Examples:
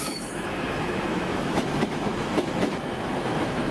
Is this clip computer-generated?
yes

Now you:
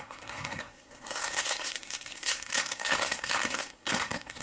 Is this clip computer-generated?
yes